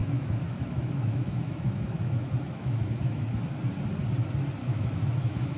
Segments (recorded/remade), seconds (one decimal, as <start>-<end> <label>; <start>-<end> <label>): 0.0-3.4 remade; 3.4-4.6 recorded; 4.6-5.6 remade